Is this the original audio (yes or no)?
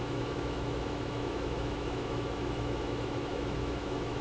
no